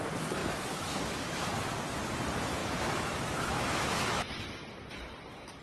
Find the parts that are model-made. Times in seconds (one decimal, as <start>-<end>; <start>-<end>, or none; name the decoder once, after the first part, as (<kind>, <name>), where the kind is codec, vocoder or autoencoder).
0.4-1.5 (autoencoder, DAC-VAE); 2.6-4.3